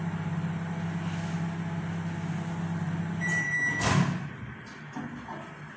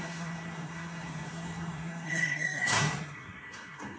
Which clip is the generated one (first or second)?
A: second